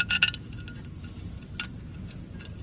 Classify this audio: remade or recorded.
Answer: recorded